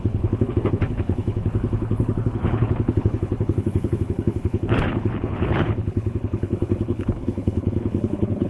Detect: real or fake fake